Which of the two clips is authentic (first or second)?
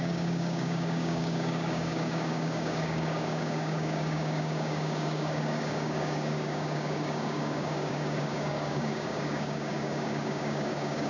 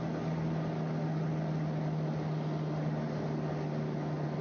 second